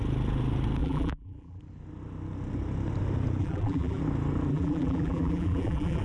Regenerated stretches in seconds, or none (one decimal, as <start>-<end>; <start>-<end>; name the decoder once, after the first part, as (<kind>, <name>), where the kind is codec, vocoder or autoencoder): 0.8-1.6 (vocoder, BigVGAN v2); 3.4-4.0; 4.5-6.0